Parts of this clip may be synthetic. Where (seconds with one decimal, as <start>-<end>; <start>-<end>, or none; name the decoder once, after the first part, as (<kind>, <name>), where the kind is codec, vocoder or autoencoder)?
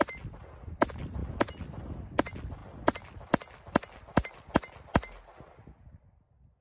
none